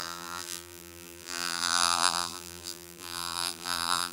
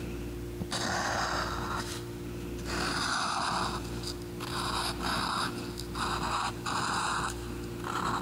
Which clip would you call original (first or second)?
second